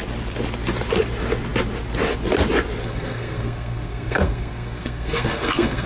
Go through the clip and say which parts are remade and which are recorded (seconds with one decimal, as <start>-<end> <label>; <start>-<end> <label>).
0.0-2.8 recorded; 2.8-5.9 remade